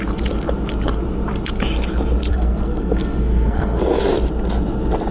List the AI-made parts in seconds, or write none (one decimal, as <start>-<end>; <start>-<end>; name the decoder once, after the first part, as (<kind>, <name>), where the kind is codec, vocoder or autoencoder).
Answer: 2.3-3.8 (codec, SNAC)